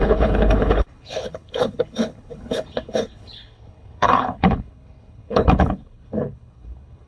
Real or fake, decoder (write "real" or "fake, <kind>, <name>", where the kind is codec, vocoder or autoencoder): fake, codec, HILCodec